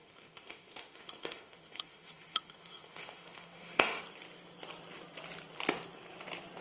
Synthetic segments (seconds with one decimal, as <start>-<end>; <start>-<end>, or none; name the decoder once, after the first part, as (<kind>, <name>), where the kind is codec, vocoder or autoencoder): 0.0-4.0 (autoencoder, DAC-VAE)

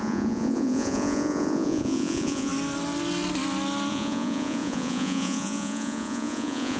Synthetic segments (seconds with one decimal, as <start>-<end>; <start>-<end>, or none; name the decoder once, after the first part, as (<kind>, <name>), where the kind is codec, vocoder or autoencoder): 0.0-2.5 (vocoder, Vocos); 3.9-6.8

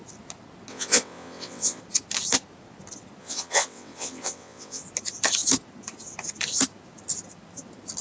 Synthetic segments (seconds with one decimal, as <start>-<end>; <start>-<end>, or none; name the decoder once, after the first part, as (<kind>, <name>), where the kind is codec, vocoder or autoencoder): 0.7-1.8 (vocoder, WaveNeXt); 3.2-4.8

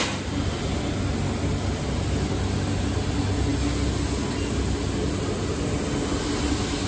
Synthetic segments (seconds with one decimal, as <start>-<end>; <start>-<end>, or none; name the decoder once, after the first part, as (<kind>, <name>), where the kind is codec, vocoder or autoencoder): none

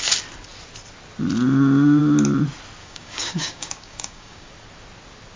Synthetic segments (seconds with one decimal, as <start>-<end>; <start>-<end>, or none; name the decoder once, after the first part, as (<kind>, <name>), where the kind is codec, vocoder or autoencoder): 2.8-4.5 (codec, DAC)